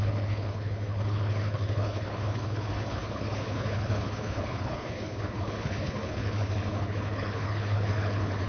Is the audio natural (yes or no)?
no